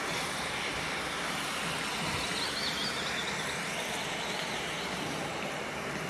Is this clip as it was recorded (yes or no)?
yes